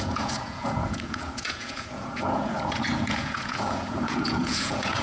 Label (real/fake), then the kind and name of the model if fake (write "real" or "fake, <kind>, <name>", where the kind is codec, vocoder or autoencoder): fake, vocoder, Vocos